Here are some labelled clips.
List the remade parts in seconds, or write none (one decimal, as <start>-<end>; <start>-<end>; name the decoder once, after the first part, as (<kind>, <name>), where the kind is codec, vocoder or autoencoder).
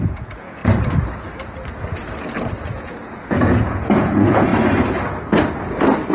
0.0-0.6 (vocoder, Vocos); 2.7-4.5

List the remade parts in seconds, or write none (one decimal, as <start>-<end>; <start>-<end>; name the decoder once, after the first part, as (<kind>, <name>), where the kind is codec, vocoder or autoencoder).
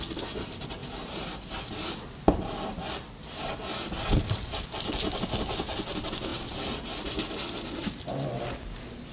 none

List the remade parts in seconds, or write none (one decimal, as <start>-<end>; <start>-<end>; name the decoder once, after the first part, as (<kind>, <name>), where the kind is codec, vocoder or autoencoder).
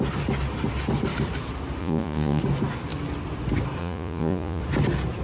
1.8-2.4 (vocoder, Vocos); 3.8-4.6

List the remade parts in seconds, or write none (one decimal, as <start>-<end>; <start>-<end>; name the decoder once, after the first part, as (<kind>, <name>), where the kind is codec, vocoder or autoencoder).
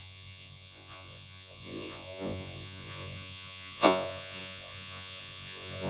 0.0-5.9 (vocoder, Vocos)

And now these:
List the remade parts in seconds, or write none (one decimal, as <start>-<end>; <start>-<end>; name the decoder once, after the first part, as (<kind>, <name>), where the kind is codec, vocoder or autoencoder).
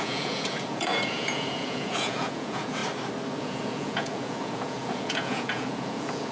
0.0-2.8 (vocoder, Vocos); 3.4-6.3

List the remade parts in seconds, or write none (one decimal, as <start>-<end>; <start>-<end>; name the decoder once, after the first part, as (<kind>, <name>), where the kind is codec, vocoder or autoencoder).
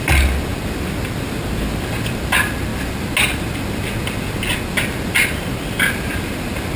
none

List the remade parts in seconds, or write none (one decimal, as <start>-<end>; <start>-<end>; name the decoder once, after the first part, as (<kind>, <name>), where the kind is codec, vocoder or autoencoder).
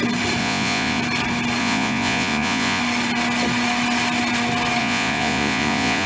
0.4-1.0 (vocoder, Vocos); 1.6-2.8; 4.8-6.1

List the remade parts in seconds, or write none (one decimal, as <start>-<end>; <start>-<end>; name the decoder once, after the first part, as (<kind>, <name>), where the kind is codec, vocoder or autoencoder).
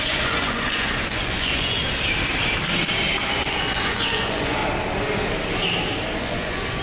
0.0-1.8 (vocoder, Vocos); 3.2-4.6; 6.2-6.8